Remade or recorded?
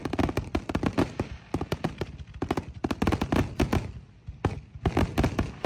recorded